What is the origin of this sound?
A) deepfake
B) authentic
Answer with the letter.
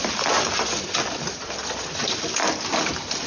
B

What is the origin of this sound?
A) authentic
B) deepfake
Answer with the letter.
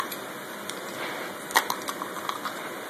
A